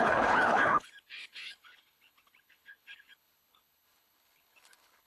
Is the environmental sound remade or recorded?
remade